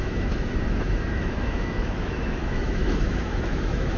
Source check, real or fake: fake